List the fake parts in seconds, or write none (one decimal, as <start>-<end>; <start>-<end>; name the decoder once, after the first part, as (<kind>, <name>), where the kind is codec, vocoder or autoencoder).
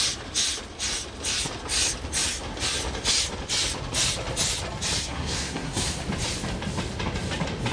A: 5.0-6.0 (codec, SNAC)